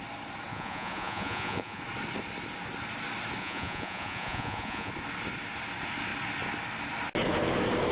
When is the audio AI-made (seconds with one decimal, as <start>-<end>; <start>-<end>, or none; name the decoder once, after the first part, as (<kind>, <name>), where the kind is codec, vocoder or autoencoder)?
0.5-1.8 (vocoder, Vocos); 3.4-4.9